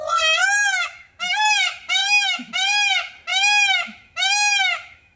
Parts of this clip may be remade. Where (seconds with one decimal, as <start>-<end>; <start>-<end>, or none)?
0.4-1.6; 2.0-2.5; 3.3-5.2